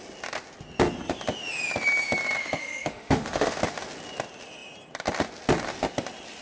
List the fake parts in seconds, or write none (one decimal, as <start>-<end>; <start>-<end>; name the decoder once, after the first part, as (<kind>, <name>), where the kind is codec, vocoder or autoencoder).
2.4-3.6 (autoencoder, DAC-VAE)